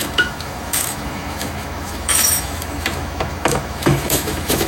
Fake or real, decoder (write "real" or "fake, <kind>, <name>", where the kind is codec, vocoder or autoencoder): fake, autoencoder, DAC-VAE